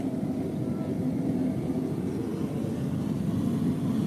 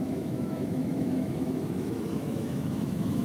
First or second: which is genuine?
first